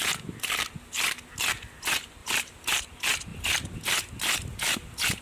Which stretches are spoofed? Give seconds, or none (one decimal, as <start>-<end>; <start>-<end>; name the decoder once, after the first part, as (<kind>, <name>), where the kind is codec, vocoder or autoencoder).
2.2-2.8 (vocoder, BigVGAN v2); 3.3-4.1